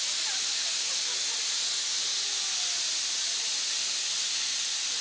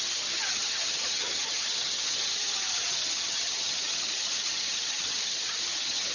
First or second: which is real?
first